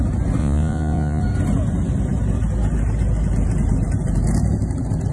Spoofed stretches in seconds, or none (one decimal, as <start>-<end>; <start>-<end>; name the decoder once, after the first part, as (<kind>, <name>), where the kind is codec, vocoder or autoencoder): 0.4-1.2 (vocoder, Vocos)